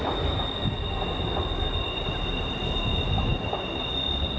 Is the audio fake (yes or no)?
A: no